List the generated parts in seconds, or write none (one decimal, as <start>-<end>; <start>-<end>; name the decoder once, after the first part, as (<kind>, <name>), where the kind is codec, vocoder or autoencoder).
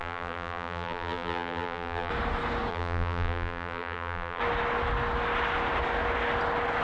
0.0-2.1 (vocoder, BigVGAN v2); 2.7-4.4